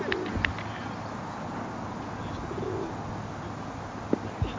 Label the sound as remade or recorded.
recorded